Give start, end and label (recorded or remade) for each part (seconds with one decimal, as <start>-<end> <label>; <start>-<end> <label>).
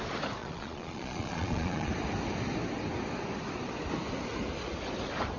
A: 0.0-0.4 recorded; 0.4-1.9 remade; 1.9-5.4 recorded